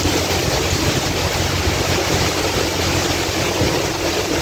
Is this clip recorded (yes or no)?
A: yes